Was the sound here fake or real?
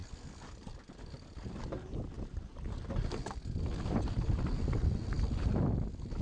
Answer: real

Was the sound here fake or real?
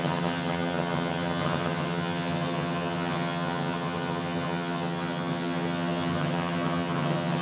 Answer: fake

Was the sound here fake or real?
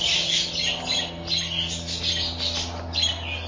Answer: real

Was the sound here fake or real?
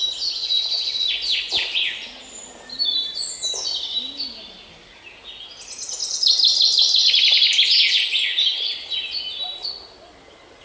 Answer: real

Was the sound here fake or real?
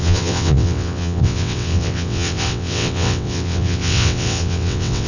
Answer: fake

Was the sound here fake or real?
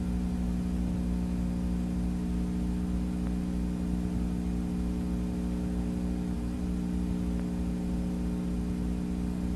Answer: real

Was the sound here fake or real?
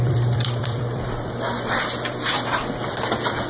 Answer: fake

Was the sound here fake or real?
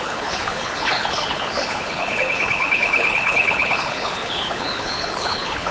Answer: fake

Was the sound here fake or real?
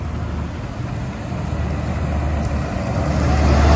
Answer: real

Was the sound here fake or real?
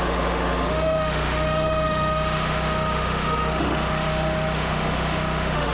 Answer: fake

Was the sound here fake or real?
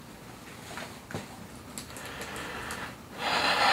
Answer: real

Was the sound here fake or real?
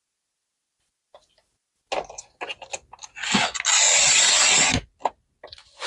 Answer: real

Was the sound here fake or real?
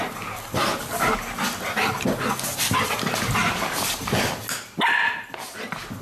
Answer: real